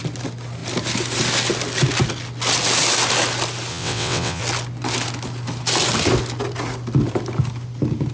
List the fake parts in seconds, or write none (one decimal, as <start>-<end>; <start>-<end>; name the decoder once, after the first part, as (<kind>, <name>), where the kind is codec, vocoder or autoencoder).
3.7-4.4 (vocoder, WaveNeXt)